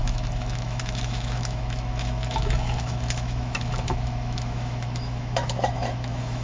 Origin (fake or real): fake